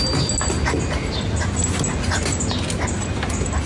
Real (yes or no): yes